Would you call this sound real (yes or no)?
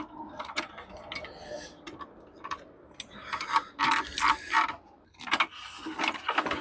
yes